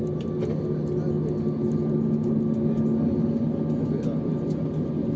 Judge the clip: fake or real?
real